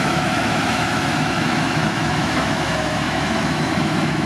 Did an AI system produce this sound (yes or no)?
yes